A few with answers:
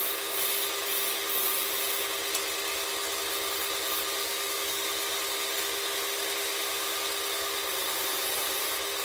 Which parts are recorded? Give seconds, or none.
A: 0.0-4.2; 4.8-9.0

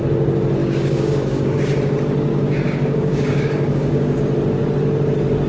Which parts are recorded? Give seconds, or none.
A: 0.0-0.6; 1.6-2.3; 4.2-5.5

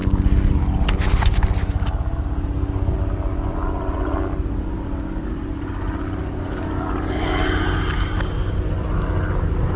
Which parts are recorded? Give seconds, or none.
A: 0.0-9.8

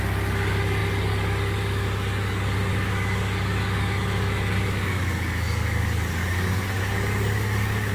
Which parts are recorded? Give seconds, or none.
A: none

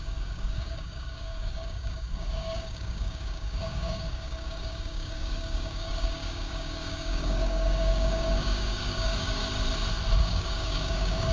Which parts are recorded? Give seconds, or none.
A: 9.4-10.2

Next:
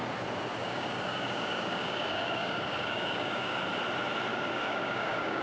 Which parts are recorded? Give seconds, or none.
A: 0.0-0.6; 3.6-4.3